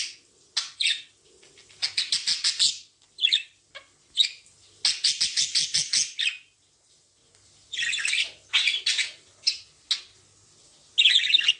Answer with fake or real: real